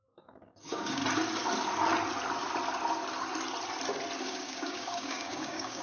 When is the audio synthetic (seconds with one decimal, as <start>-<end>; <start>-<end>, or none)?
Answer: 0.0-1.0; 4.2-5.8